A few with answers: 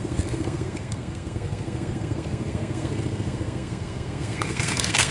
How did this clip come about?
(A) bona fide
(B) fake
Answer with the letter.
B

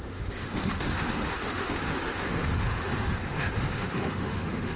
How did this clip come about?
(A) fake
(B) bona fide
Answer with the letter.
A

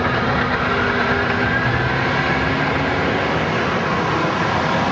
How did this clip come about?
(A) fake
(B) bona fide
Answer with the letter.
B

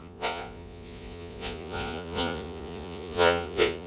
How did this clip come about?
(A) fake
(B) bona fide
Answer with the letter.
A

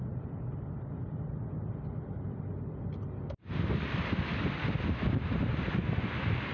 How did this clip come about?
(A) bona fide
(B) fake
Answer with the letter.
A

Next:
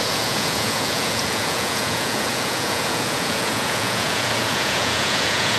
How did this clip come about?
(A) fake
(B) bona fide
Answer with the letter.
A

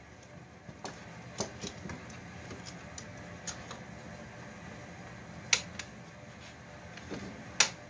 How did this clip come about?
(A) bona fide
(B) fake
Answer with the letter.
A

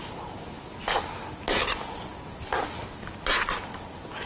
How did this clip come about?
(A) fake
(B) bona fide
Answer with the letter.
B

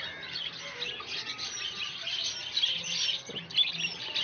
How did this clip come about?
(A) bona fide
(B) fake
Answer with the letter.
A